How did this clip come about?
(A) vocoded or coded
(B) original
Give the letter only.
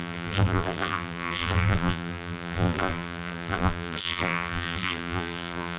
A